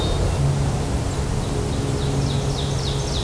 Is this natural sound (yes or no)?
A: yes